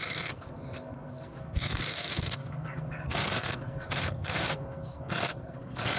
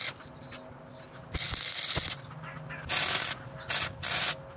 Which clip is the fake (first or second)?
first